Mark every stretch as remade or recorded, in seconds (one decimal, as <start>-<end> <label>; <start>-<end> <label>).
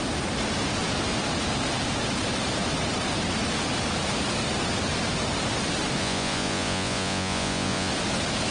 0.0-6.0 recorded; 6.0-7.9 remade; 7.9-8.5 recorded